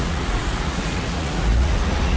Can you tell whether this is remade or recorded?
remade